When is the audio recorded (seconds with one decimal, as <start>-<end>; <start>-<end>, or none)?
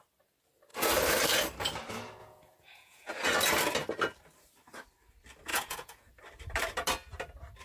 0.0-2.2; 3.1-5.5; 6.2-7.6